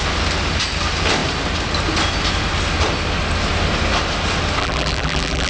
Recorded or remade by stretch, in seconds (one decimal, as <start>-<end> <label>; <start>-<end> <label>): 0.0-4.6 recorded; 4.6-5.5 remade

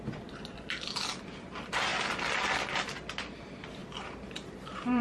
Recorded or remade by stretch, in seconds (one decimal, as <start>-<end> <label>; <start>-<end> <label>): 0.0-3.8 recorded; 3.8-5.0 remade

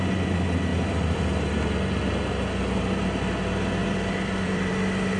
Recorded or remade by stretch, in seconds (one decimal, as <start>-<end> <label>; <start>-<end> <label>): 0.0-0.7 recorded; 0.7-1.2 remade; 1.2-3.8 recorded; 3.8-4.7 remade; 4.7-5.2 recorded

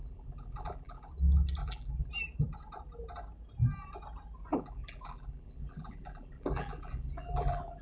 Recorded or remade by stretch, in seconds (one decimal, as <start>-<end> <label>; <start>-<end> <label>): 0.0-1.1 remade; 1.1-1.6 recorded; 1.6-2.1 remade; 2.1-4.5 recorded; 4.5-7.8 remade

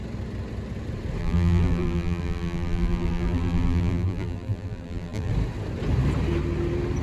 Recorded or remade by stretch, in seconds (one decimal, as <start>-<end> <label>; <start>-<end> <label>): 0.0-1.2 recorded; 1.2-5.3 remade; 5.3-7.0 recorded